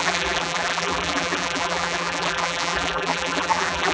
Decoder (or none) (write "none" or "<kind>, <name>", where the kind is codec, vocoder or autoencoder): vocoder, BigVGAN v2